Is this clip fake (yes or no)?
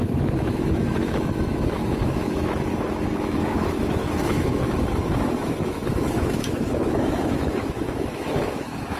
yes